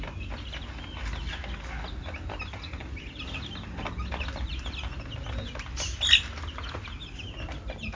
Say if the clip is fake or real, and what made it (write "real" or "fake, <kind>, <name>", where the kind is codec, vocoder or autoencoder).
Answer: real